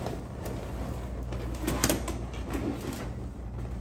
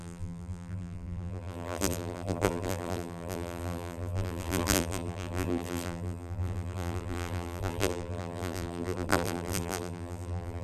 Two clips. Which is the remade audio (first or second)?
second